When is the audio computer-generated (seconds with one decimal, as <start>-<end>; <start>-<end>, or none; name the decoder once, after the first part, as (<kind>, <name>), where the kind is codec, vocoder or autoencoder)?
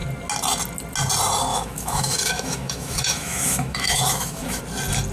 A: 1.5-4.6 (autoencoder, DAC-VAE)